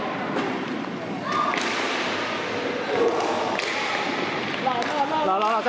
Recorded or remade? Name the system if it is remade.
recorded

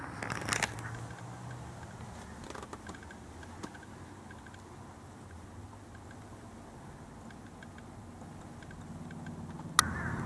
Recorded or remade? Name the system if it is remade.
recorded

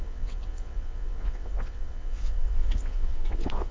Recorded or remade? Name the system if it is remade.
remade, vocoder, WaveNeXt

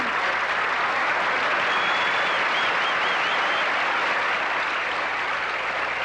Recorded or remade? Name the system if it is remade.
recorded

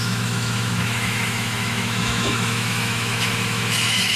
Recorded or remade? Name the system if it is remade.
remade, autoencoder, DAC-VAE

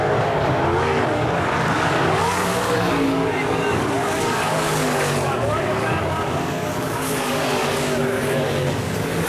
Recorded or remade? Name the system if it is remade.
remade, codec, DAC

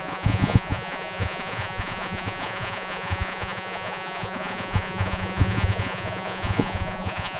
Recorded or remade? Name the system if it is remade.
remade, vocoder, Vocos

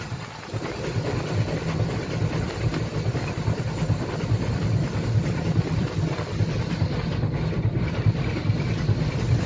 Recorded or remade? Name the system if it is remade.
remade, vocoder, BigVGAN v2